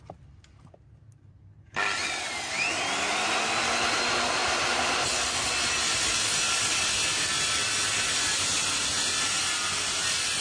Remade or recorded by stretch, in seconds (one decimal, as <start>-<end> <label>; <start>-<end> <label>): 0.0-10.4 recorded